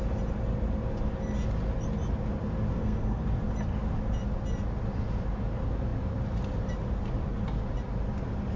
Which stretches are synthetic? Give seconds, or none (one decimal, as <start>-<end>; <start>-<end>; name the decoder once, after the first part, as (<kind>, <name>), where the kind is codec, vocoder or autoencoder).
2.7-3.2 (codec, SNAC)